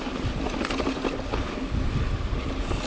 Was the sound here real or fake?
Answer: real